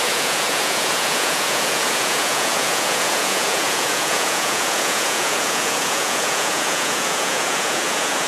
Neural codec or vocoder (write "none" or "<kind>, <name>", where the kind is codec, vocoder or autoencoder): vocoder, Vocos